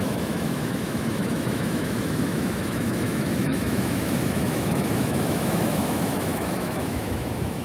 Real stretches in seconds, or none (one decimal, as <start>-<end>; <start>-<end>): none